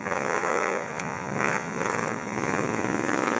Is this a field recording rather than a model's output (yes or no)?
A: no